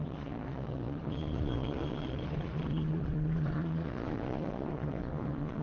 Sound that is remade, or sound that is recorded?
remade